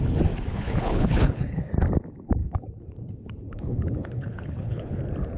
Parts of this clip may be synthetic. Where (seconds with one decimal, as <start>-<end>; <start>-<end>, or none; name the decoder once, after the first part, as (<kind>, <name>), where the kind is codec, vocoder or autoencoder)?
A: 0.5-1.7 (codec, HILCodec); 2.4-5.0